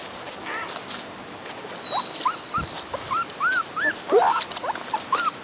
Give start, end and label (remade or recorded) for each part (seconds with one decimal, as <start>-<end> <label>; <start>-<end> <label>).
0.0-5.4 recorded